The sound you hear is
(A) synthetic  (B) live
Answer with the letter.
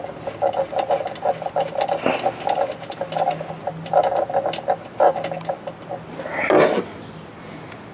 B